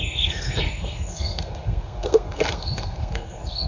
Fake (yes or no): yes